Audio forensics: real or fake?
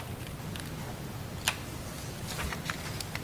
real